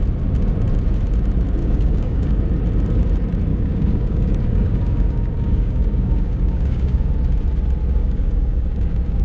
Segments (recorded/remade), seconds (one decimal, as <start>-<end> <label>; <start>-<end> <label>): 0.0-1.6 recorded; 1.6-2.4 remade; 2.4-3.5 recorded; 3.5-7.1 remade; 7.1-8.0 recorded; 8.0-9.2 remade